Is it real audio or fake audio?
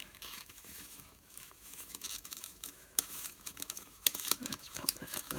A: fake